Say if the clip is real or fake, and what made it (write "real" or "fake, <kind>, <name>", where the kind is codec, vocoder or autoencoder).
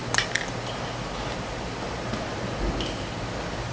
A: real